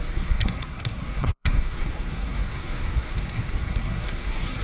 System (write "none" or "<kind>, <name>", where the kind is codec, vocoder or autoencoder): codec, SNAC